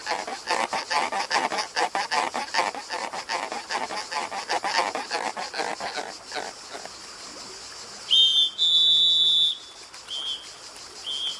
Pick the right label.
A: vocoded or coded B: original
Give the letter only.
B